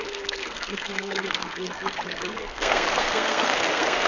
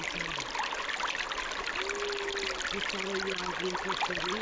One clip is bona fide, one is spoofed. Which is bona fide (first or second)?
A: second